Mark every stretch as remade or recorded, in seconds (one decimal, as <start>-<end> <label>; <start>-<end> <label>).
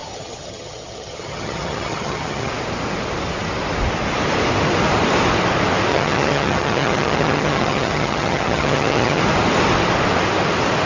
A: 0.0-2.5 remade; 2.5-5.9 recorded; 5.9-9.2 remade; 9.2-10.9 recorded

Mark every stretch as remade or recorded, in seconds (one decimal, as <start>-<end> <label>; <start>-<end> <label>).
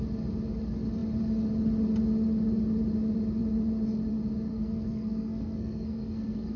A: 0.0-4.5 recorded; 4.5-6.6 remade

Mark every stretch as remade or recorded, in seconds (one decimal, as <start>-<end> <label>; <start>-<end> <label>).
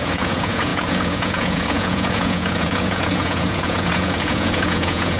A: 0.0-5.2 remade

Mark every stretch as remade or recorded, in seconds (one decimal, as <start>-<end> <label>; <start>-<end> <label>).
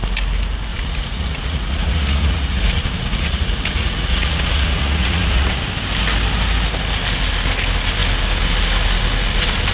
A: 0.0-0.7 recorded; 0.7-5.7 remade; 5.7-9.7 recorded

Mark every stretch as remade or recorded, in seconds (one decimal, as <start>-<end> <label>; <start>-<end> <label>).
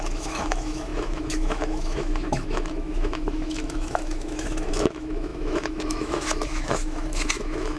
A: 0.0-7.8 remade